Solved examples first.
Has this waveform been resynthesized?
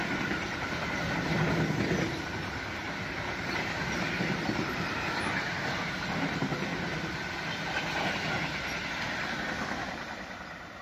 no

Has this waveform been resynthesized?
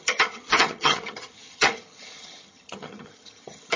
yes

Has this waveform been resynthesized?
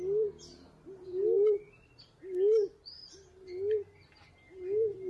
no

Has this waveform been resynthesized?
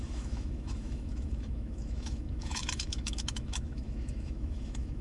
yes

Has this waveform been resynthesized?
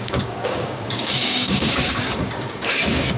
yes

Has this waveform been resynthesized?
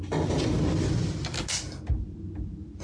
no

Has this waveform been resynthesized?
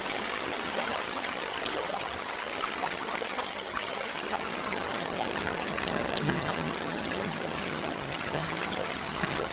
yes